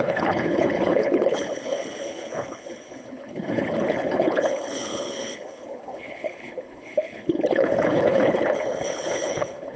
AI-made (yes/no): yes